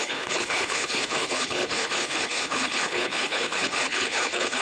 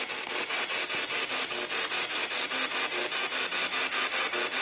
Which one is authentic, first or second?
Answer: second